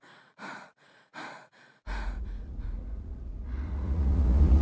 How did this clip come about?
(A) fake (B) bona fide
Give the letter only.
A